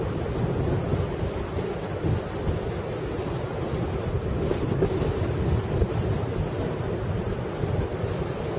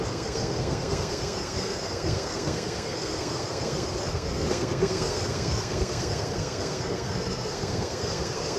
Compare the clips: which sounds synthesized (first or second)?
second